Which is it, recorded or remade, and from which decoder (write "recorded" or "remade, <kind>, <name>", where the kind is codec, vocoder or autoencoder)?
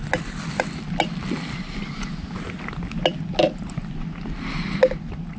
recorded